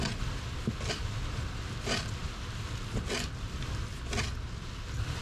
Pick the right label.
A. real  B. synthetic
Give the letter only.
A